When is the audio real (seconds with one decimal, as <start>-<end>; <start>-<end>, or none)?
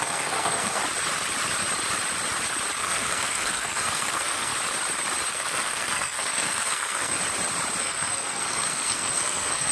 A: 0.8-2.8; 4.5-5.3; 7.2-7.8